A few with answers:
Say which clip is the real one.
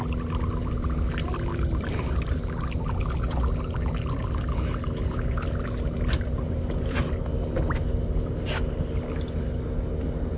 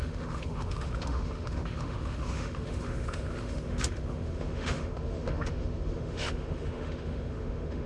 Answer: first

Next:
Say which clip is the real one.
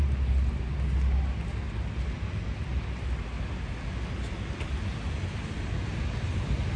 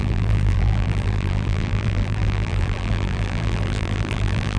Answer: first